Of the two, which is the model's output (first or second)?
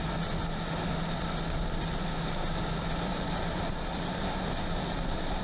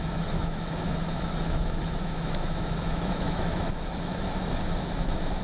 second